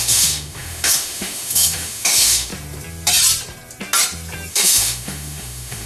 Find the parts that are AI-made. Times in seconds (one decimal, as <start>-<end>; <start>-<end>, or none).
0.0-2.5; 4.5-5.9